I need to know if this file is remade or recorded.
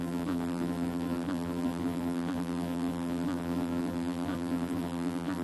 remade